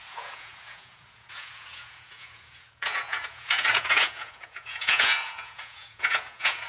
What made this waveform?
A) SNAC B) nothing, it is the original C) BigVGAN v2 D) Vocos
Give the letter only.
D